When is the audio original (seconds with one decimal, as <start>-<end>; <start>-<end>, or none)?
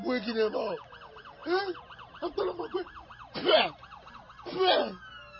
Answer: 0.0-1.4; 4.1-5.4